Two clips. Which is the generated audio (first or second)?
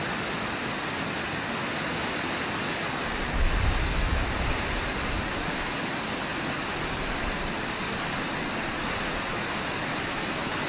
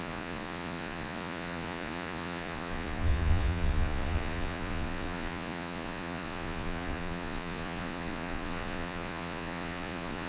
second